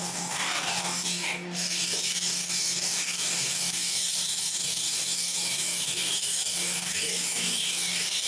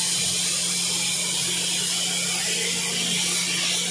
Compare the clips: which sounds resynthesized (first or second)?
first